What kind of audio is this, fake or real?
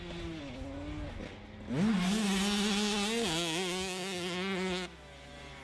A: real